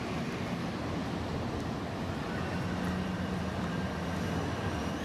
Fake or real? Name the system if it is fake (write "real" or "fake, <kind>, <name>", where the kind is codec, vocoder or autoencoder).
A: real